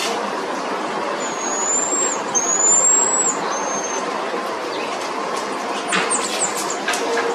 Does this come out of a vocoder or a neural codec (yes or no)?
no